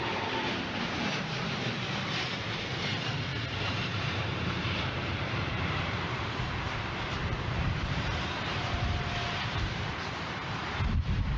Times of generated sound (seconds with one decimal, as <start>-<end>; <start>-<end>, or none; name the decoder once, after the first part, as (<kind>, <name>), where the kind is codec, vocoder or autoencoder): 0.0-11.4 (vocoder, BigVGAN v2)